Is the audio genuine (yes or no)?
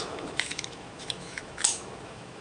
no